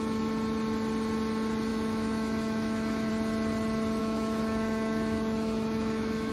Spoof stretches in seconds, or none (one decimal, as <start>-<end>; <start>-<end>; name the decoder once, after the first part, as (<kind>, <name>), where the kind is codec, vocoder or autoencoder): 1.7-3.1 (autoencoder, DAC-VAE); 4.0-6.3